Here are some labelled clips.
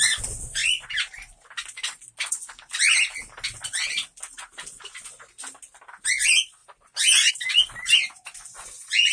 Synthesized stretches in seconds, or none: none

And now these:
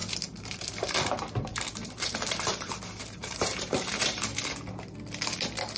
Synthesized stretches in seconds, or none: 0.0-1.1 (vocoder, BigVGAN v2); 1.5-4.4

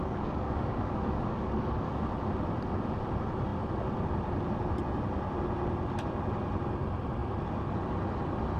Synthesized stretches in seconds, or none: 0.0-2.0 (codec, DAC)

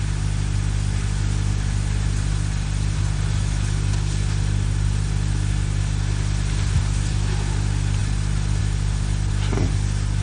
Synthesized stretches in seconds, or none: none

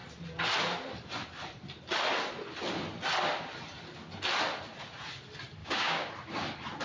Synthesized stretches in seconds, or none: 5.6-6.1 (codec, DAC)

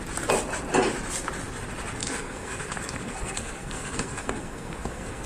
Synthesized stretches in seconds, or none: 2.0-5.3 (codec, SNAC)